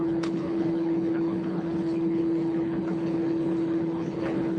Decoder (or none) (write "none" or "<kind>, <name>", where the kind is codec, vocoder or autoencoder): codec, HILCodec